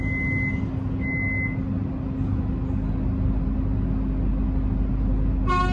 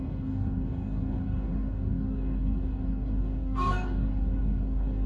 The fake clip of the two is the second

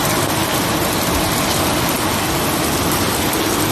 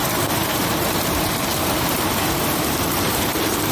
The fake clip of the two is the second